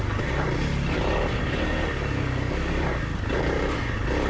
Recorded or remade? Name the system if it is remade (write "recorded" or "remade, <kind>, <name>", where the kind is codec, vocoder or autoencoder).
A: recorded